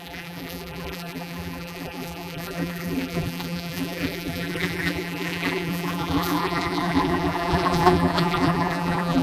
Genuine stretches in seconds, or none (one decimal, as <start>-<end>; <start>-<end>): none